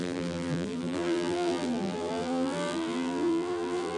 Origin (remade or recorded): remade